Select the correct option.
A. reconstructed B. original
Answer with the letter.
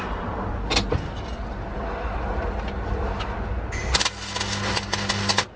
B